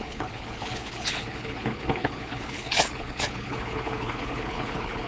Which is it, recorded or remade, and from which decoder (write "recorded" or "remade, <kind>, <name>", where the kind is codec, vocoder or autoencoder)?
remade, codec, HILCodec